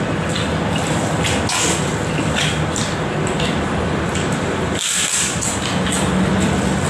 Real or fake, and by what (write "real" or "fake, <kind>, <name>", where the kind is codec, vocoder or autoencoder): real